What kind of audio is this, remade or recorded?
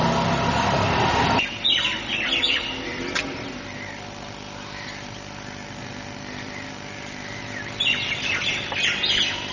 recorded